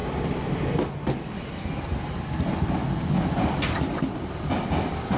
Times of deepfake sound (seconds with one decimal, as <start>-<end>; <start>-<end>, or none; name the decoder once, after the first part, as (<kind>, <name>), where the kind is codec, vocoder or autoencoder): none